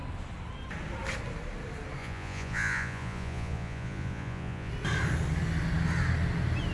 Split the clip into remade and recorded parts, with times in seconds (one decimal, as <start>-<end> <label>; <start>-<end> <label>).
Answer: 0.0-2.0 recorded; 2.0-4.7 remade; 4.7-6.7 recorded